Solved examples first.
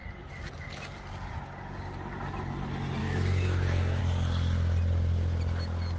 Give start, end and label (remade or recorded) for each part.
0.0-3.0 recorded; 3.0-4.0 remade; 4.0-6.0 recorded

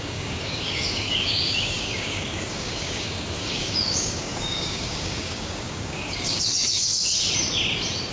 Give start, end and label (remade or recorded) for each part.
0.0-7.1 remade; 7.1-8.1 recorded

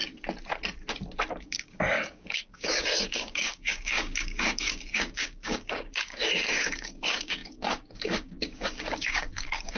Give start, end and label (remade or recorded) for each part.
0.0-1.3 recorded; 1.3-9.8 remade

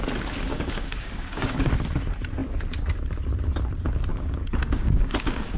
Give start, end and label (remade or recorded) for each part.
0.0-0.5 recorded; 0.5-1.7 remade; 1.7-4.1 recorded; 4.1-5.6 remade

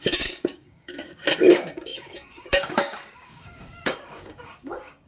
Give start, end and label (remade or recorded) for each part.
0.0-5.1 remade

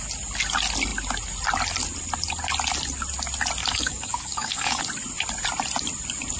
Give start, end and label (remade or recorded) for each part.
0.0-3.6 recorded; 3.6-4.8 remade; 4.8-6.4 recorded

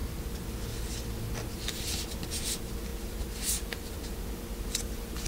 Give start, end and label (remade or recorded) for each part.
0.0-5.3 recorded

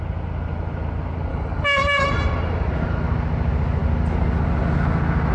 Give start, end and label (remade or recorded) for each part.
0.0-1.3 recorded; 1.3-2.1 remade; 2.1-5.3 recorded